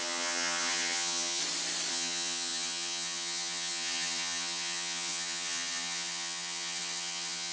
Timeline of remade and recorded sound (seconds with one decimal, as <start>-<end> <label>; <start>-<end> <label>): 0.0-1.4 remade; 1.4-1.9 recorded; 1.9-7.5 remade